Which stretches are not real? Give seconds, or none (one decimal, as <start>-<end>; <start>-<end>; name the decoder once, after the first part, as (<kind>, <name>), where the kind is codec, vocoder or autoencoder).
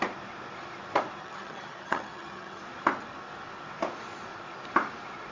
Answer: 1.2-2.6 (vocoder, HiFi-GAN)